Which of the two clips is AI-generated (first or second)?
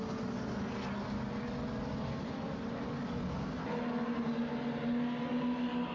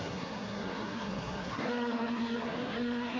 second